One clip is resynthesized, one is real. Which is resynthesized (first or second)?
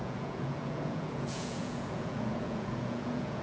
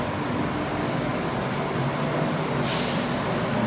first